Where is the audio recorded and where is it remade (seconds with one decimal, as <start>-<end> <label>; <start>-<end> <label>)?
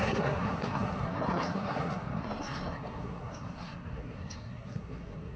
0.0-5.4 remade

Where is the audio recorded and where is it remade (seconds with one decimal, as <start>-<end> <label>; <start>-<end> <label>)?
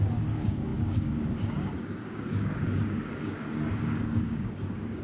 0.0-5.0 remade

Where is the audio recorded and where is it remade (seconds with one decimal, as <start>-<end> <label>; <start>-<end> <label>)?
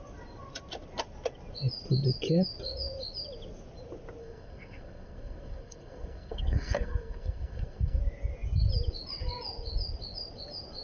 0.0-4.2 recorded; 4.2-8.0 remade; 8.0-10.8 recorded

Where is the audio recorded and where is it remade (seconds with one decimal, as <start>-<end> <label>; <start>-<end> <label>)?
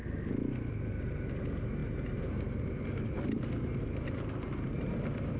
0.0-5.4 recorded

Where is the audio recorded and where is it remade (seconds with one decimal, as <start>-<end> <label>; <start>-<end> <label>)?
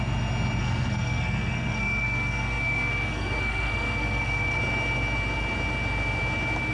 0.0-0.6 recorded; 0.6-4.6 remade; 4.6-6.7 recorded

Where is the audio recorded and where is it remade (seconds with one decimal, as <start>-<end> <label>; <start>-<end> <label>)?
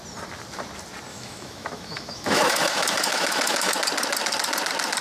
0.0-1.1 recorded; 1.1-3.7 remade; 3.7-5.0 recorded